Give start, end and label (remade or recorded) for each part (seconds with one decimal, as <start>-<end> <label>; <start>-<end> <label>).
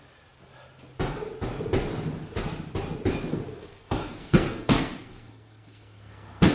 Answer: 0.0-3.3 recorded; 3.3-6.5 remade